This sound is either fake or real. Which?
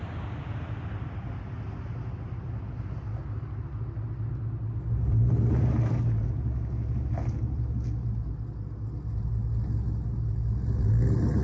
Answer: real